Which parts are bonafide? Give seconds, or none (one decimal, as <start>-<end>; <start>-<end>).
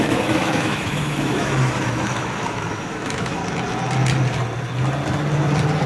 3.4-5.9